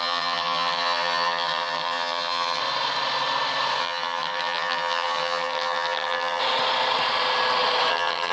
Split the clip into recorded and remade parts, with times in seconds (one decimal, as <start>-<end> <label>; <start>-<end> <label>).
0.0-2.6 remade; 2.6-3.8 recorded; 3.8-6.4 remade; 6.4-7.9 recorded; 7.9-8.3 remade